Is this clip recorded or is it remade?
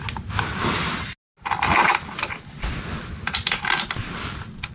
recorded